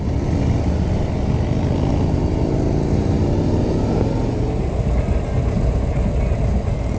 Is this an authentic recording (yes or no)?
yes